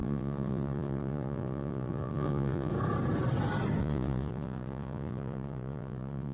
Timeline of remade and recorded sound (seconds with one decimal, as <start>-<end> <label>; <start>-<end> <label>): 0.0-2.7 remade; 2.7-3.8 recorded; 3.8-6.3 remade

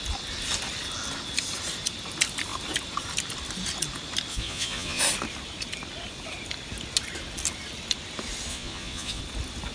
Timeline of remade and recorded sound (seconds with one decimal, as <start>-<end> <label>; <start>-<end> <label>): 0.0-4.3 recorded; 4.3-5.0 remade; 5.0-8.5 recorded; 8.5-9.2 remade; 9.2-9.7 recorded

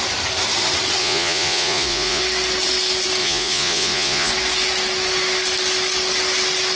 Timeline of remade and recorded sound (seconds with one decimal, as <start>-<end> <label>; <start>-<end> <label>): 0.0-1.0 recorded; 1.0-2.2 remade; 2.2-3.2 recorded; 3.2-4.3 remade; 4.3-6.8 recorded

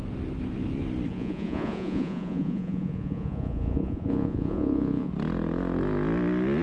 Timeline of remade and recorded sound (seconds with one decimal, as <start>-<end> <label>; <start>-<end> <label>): 0.0-1.1 recorded; 1.1-5.1 remade; 5.1-6.6 recorded

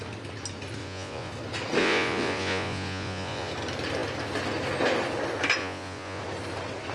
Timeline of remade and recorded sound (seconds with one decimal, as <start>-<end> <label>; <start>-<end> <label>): 0.0-0.8 recorded; 0.8-1.3 remade; 1.3-1.8 recorded; 1.8-3.5 remade; 3.5-5.6 recorded; 5.6-6.2 remade; 6.2-6.9 recorded